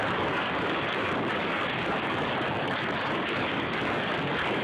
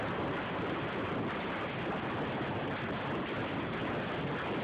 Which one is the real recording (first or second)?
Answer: second